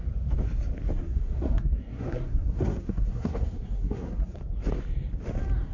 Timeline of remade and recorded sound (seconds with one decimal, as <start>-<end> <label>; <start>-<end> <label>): 0.0-1.0 recorded; 1.0-4.4 remade; 4.4-5.7 recorded